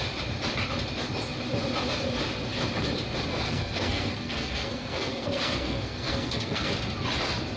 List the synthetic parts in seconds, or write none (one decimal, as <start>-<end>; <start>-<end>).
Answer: 3.3-6.7